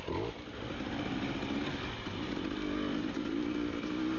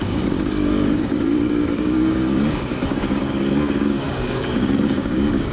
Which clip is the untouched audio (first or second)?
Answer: first